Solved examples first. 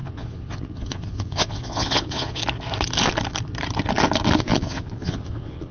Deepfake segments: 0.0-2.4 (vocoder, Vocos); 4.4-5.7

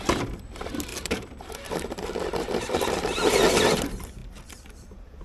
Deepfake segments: 0.9-1.5 (vocoder, BigVGAN v2)

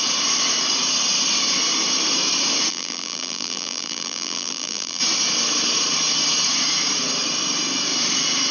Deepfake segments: 2.7-5.0 (vocoder, BigVGAN v2)

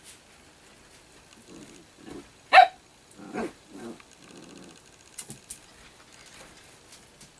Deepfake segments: none

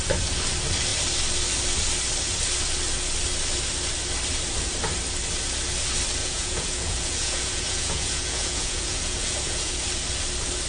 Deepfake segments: 6.2-9.7 (vocoder, Vocos)